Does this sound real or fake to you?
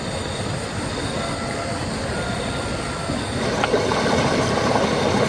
real